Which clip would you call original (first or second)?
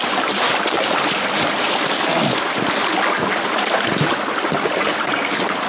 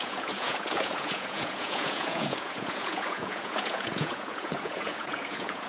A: first